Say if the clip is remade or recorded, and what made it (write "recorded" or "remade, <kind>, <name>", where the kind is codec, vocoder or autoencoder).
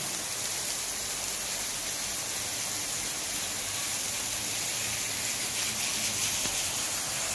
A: recorded